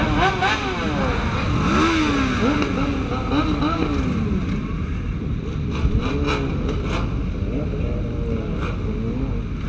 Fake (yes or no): no